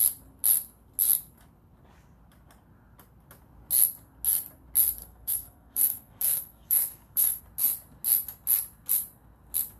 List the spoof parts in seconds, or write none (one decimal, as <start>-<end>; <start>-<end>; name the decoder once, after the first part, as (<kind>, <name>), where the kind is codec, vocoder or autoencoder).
5.0-7.4 (codec, SNAC)